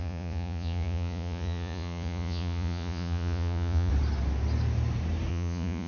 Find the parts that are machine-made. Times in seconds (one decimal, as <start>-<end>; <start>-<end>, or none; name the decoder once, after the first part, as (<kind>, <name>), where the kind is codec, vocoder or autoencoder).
0.0-3.9 (vocoder, Vocos); 5.3-5.9